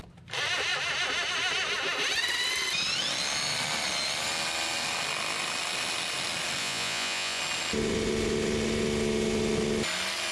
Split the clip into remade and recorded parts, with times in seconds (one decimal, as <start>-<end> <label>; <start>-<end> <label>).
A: 0.0-6.6 recorded; 6.6-7.4 remade; 7.4-10.3 recorded